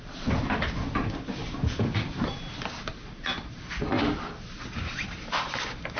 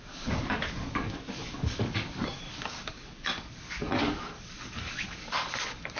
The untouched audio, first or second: first